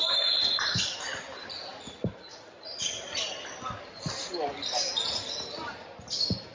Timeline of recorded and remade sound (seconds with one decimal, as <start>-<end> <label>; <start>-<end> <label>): 0.0-6.5 recorded